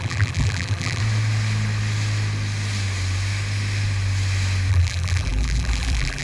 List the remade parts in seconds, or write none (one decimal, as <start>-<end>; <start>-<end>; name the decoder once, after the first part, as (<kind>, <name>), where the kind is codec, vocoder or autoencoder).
0.0-1.0 (vocoder, BigVGAN v2); 4.7-6.2